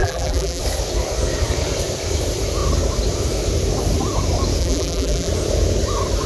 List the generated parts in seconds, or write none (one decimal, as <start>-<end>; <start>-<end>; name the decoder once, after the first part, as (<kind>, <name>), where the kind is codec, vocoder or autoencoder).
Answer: 0.0-0.6 (vocoder, BigVGAN v2); 4.6-5.3